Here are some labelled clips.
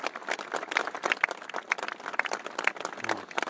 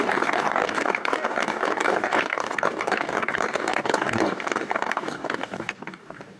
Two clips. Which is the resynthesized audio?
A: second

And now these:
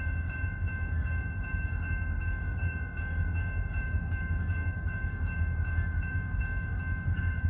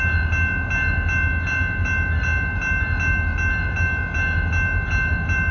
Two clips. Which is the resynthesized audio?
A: first